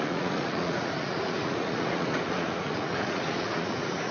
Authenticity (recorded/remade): remade